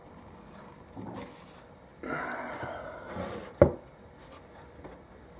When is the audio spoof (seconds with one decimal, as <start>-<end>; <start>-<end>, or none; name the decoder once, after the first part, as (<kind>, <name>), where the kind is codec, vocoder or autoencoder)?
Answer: none